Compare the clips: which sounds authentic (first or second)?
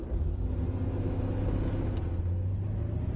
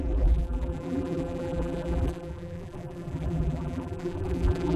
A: first